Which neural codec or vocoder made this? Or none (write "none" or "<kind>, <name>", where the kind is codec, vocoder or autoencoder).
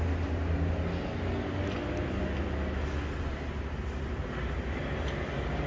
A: none